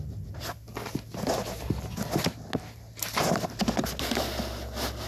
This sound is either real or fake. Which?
real